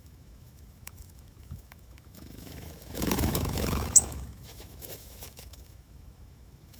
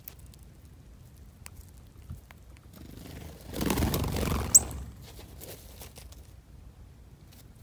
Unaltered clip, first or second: second